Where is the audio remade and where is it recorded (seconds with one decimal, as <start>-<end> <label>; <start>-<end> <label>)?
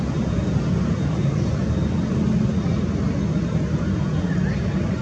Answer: 0.0-5.0 recorded